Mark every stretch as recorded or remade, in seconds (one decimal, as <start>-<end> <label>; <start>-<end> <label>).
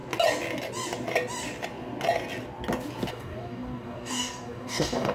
0.0-3.1 recorded; 3.1-5.1 remade